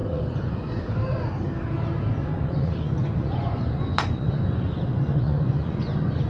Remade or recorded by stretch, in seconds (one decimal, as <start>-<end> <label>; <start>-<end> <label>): 0.0-0.8 remade; 0.8-2.2 recorded; 2.2-6.3 remade